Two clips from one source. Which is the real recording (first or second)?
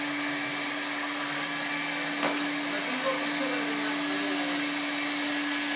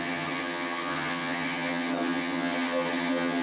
first